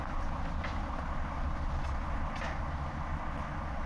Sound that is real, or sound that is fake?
fake